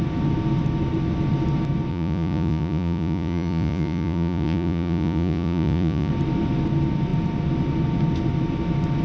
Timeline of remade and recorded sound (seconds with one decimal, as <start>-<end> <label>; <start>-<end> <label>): 0.0-1.9 recorded; 1.9-6.1 remade; 6.1-9.0 recorded